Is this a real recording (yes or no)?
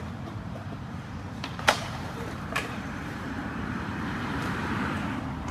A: no